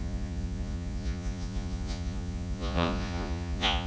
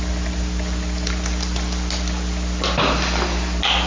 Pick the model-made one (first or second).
first